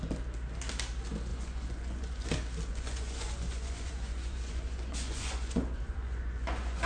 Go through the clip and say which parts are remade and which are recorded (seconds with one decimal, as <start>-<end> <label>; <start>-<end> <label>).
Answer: 0.0-1.3 recorded; 1.3-2.3 remade; 2.3-2.7 recorded; 2.7-6.9 remade